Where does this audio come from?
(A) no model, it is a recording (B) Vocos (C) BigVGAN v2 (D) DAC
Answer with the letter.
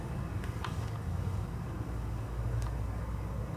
D